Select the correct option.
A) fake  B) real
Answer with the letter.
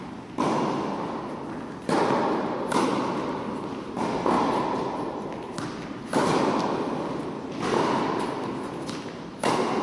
B